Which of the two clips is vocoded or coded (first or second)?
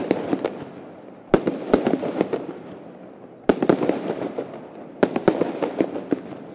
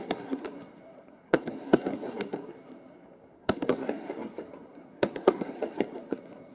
second